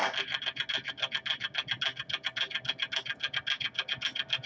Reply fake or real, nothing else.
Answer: real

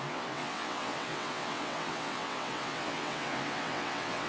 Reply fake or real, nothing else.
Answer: fake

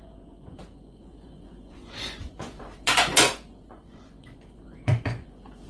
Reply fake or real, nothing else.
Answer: fake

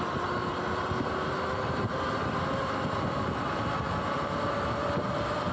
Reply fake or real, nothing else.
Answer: real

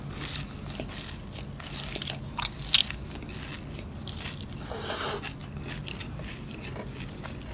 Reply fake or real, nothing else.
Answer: real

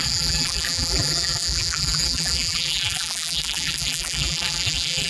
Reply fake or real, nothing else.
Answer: fake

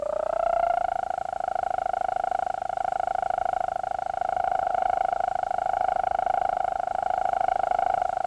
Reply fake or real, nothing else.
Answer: real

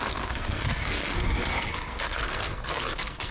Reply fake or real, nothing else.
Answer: fake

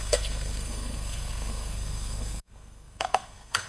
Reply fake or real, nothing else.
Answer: fake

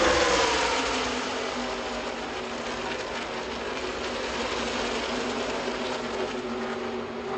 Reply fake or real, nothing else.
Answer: real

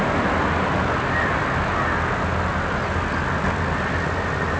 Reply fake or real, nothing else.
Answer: real